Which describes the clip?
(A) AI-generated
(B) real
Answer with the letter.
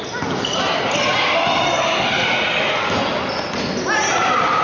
B